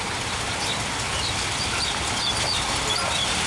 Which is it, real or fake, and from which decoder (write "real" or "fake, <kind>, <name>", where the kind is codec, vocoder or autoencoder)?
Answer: real